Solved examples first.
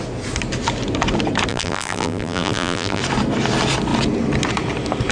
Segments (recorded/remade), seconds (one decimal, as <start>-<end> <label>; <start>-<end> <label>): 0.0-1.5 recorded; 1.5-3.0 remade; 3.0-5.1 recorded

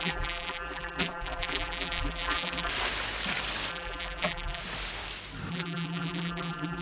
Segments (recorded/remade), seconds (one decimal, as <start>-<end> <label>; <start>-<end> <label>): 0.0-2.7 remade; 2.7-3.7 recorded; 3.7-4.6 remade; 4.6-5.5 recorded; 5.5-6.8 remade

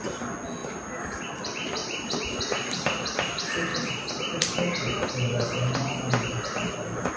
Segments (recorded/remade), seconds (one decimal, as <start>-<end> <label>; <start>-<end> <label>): 0.0-0.6 recorded; 0.6-1.2 remade; 1.2-1.8 recorded; 1.8-2.4 remade; 2.4-3.7 recorded; 3.7-5.1 remade; 5.1-7.2 recorded

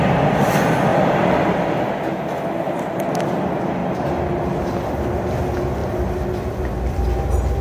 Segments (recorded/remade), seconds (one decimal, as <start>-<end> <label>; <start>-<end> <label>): 0.0-0.9 recorded; 0.9-1.9 remade; 1.9-7.6 recorded

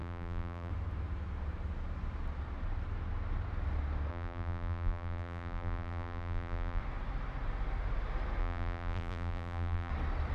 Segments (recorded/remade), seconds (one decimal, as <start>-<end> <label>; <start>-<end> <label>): 0.0-0.7 remade; 0.7-4.1 recorded; 4.1-6.8 remade; 6.8-8.4 recorded; 8.4-9.9 remade; 9.9-10.3 recorded

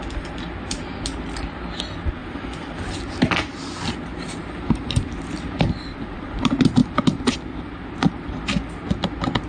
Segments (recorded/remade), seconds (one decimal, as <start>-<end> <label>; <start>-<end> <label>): 0.0-2.2 recorded; 2.2-3.0 remade; 3.0-9.5 recorded